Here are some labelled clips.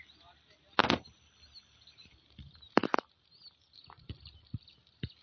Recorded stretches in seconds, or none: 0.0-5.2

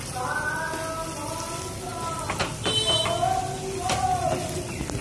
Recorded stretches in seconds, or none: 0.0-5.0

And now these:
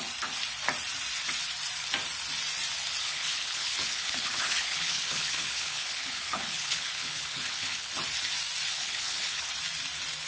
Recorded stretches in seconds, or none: 0.0-3.0; 7.9-8.7; 9.5-10.3

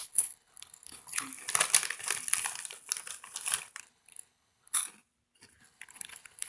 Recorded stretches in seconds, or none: 1.3-3.8; 4.8-5.6